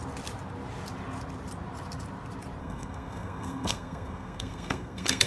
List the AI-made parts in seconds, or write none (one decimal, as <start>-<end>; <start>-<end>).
2.6-5.3